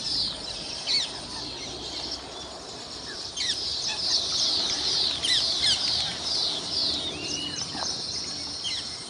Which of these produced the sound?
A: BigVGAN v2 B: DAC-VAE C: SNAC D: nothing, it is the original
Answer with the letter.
D